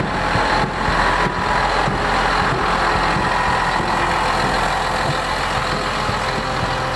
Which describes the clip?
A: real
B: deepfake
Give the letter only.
A